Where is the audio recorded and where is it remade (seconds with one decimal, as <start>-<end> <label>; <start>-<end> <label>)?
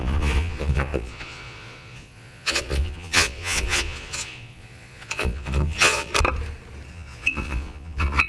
0.0-6.1 remade; 6.1-6.9 recorded; 6.9-8.3 remade